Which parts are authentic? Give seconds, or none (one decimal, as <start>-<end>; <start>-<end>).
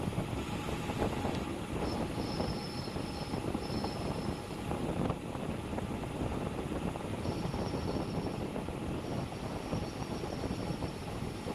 0.0-11.5